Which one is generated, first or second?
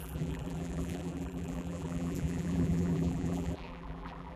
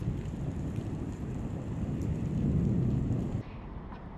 first